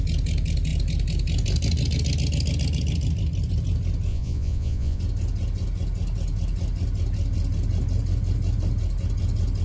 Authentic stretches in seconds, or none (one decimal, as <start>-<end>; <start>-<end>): 0.0-4.1; 5.0-9.6